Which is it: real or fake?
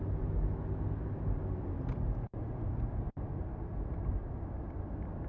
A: real